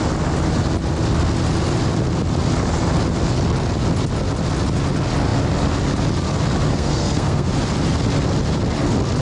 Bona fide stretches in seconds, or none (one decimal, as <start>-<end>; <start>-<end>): 0.0-6.7; 7.5-9.2